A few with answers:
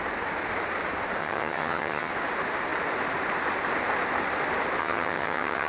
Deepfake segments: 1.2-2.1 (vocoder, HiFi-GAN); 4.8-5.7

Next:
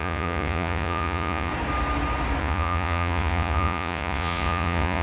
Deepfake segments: 0.0-1.5 (vocoder, Vocos); 2.4-5.0

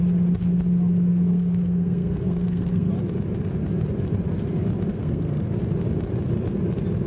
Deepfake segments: 1.1-2.9 (codec, SNAC); 4.9-5.5

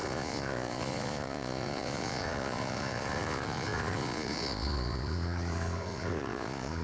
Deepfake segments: 0.0-6.8 (vocoder, Vocos)

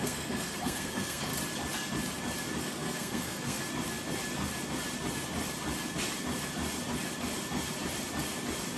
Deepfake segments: 0.0-1.3 (codec, SNAC); 2.6-3.6

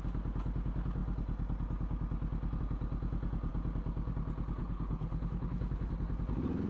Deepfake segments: 4.6-5.9 (codec, HILCodec)

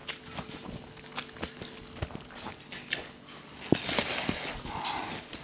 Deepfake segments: 0.0-0.5 (vocoder, BigVGAN v2)

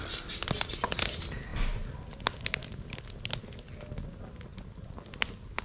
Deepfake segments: none